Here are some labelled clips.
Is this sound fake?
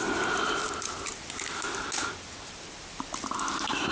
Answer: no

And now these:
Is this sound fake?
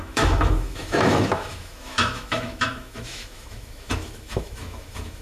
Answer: yes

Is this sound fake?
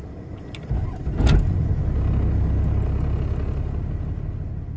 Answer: no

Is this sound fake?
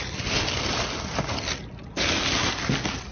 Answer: no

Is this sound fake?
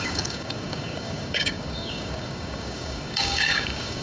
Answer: yes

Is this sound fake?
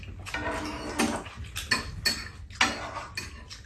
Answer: no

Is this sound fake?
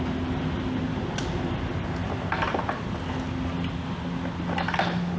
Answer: no